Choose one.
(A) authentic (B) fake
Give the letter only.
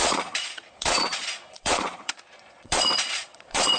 B